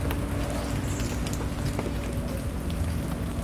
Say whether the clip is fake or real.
real